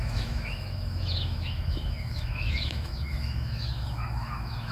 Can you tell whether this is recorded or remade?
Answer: remade